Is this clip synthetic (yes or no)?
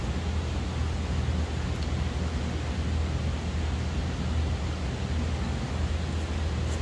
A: no